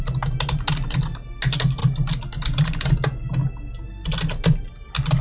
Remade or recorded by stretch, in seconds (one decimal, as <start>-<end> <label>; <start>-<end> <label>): 0.0-5.2 recorded

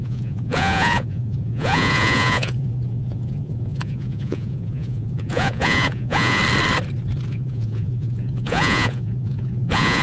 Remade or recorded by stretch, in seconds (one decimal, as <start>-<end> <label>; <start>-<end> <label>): 0.0-6.4 remade; 6.4-7.3 recorded; 7.3-10.0 remade